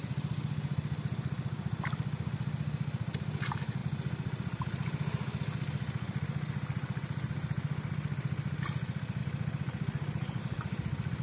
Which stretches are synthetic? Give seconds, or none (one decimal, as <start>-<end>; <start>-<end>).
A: none